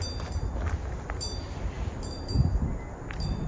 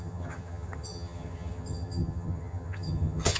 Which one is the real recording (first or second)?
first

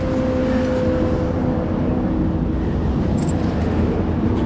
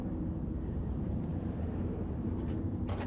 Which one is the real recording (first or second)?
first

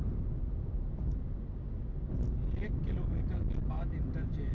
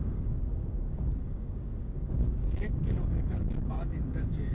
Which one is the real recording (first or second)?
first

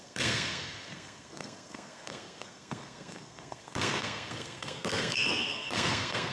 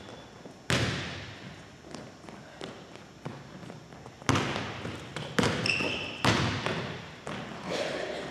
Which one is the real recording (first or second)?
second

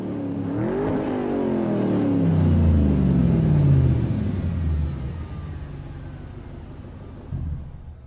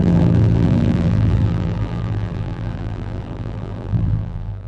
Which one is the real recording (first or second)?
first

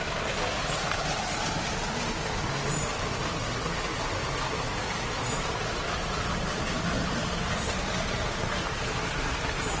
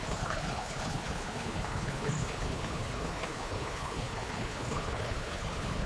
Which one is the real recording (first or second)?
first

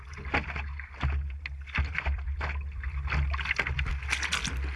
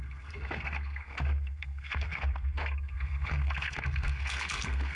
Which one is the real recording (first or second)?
first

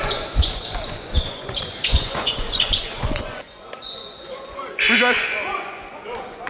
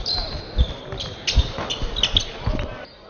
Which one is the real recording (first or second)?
second